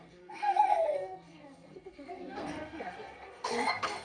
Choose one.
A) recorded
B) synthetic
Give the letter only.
B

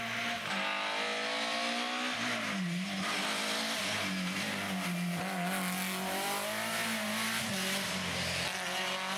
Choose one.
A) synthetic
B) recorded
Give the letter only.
B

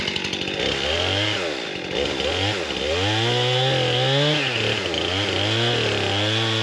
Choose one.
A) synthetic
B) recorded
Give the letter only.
B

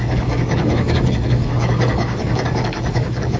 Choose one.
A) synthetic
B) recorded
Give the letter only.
A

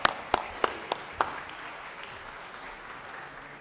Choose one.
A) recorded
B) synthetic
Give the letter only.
A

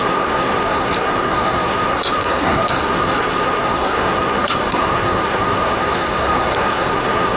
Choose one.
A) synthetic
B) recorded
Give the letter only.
A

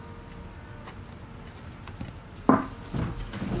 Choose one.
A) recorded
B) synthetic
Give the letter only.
A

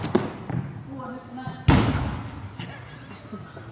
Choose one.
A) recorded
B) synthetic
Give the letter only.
A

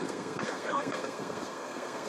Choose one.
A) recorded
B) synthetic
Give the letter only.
B